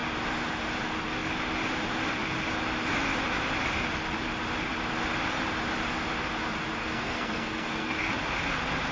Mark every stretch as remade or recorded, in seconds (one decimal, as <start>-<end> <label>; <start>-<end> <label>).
0.0-6.8 recorded; 6.8-8.0 remade; 8.0-8.9 recorded